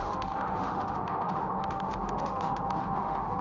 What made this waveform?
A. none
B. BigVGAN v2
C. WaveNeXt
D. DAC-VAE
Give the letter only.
D